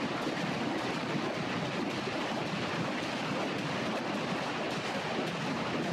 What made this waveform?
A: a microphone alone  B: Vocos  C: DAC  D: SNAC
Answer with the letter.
A